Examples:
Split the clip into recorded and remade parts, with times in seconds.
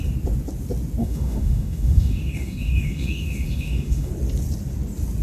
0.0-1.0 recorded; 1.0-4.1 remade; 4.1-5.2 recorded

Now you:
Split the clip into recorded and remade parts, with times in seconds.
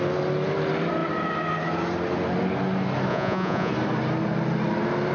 0.0-3.1 recorded; 3.1-3.7 remade; 3.7-5.1 recorded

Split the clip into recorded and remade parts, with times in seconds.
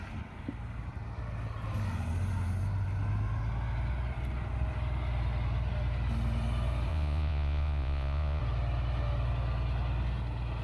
0.0-6.9 recorded; 6.9-8.4 remade; 8.4-10.6 recorded